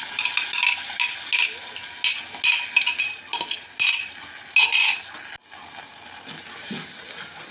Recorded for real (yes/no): yes